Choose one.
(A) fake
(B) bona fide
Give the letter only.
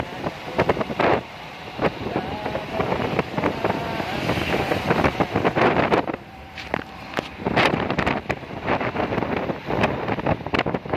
A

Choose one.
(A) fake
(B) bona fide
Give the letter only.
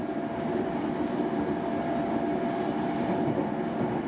B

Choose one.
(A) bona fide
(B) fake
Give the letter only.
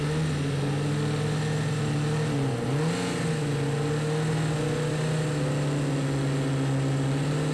A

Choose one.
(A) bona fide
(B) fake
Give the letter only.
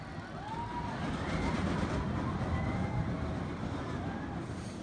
A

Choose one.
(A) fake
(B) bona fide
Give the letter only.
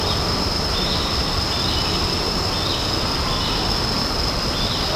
B